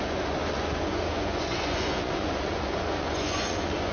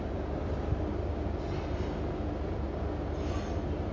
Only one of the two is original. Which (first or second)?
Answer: second